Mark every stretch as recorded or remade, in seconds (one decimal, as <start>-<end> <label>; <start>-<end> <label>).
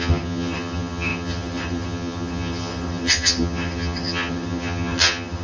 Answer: 0.0-5.4 remade